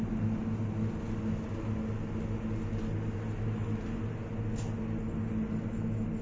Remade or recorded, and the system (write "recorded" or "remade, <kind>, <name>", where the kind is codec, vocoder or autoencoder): recorded